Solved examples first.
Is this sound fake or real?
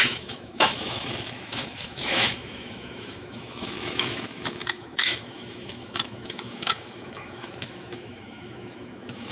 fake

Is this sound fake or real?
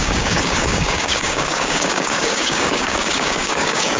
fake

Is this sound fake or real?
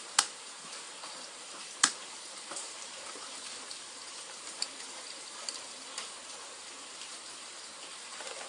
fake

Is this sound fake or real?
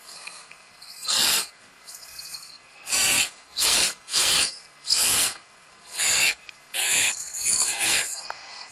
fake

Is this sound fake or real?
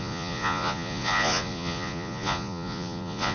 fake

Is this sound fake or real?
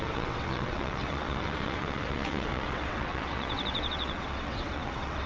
fake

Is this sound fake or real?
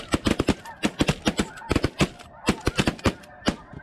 real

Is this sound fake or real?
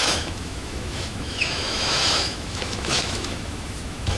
fake